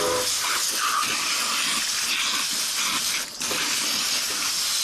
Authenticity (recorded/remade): recorded